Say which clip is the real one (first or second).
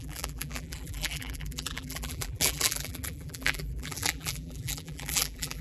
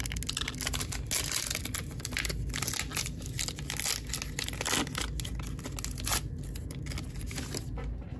second